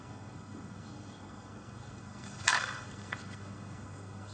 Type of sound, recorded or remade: remade